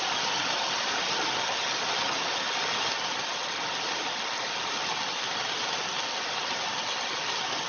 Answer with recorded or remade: recorded